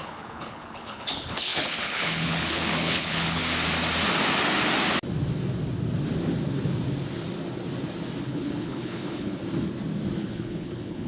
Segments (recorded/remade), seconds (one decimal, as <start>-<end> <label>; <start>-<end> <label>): 0.0-3.4 remade; 3.4-8.2 recorded; 8.2-9.4 remade; 9.4-10.2 recorded; 10.2-11.1 remade